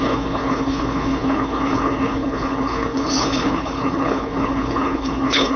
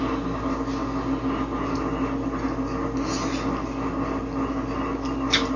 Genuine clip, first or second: second